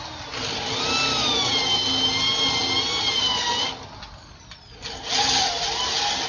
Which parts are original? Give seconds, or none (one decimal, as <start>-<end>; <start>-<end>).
0.0-6.3